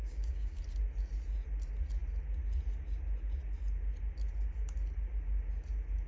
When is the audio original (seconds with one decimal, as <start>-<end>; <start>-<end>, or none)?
0.6-6.1